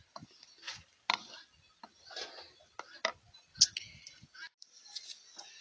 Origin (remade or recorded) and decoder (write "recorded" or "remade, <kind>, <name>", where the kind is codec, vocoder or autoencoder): recorded